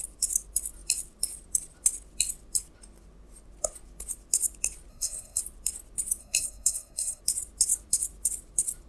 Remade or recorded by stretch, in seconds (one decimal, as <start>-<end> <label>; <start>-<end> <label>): 0.0-4.9 recorded; 4.9-5.4 remade; 5.4-6.2 recorded; 6.2-7.2 remade; 7.2-8.9 recorded